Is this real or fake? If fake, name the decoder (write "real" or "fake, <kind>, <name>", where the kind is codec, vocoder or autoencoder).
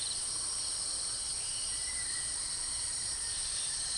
fake, vocoder, BigVGAN v2